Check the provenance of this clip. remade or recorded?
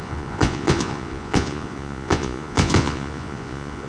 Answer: remade